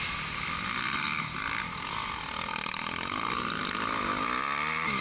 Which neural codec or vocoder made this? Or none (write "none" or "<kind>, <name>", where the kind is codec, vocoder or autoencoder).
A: none